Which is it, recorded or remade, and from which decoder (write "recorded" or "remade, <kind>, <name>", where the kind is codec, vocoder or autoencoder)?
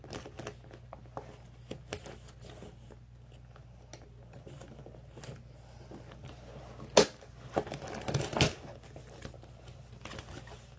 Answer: recorded